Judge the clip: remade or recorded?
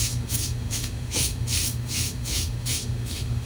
remade